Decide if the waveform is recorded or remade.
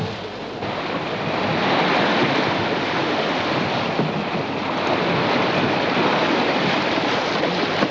recorded